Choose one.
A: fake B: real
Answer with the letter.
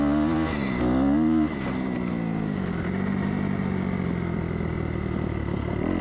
B